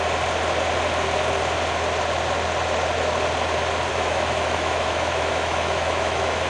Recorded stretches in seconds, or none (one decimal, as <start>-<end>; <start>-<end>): 0.0-3.9